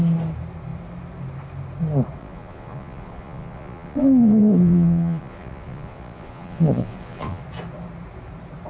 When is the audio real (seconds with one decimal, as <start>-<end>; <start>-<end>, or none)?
0.0-2.2; 7.4-8.7